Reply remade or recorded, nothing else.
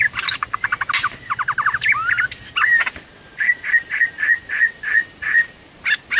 recorded